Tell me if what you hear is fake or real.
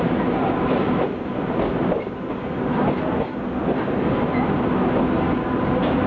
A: real